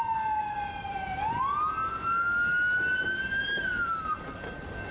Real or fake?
real